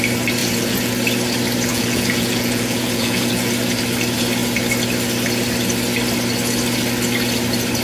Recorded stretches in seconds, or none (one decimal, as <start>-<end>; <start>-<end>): 0.0-0.4; 0.9-1.7; 3.5-7.8